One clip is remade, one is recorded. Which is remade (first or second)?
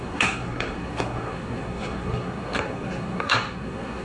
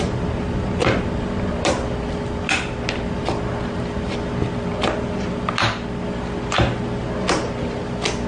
first